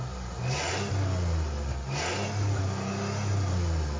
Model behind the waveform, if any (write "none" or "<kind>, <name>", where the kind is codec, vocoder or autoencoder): none